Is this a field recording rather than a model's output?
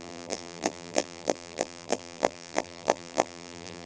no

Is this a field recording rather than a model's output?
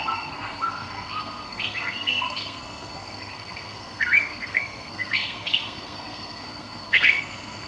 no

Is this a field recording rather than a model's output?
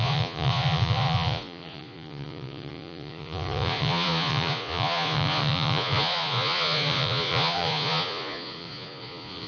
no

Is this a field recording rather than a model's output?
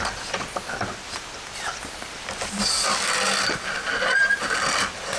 yes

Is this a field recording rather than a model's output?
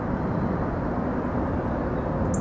yes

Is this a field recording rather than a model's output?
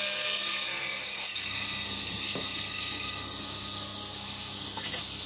no